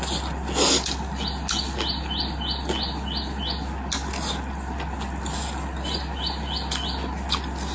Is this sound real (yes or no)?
yes